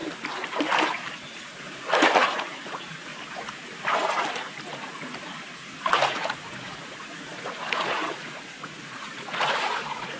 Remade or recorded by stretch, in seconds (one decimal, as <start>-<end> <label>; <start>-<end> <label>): 0.0-1.2 recorded; 1.2-3.1 remade; 3.1-5.9 recorded; 5.9-10.2 remade